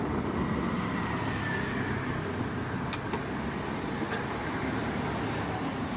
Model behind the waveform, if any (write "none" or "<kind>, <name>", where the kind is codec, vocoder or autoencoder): none